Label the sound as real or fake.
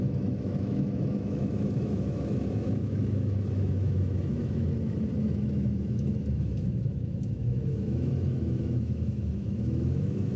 fake